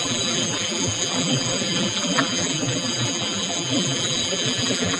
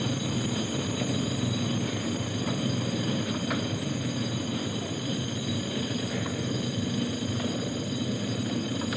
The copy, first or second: first